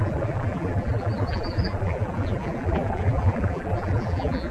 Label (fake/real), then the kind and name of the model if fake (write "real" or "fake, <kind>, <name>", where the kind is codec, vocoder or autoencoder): fake, vocoder, BigVGAN v2